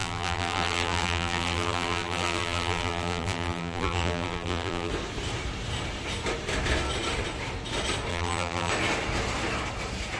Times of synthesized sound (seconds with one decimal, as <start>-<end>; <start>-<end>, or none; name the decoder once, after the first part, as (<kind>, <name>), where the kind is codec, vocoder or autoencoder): 0.0-4.9 (vocoder, BigVGAN v2); 8.1-8.7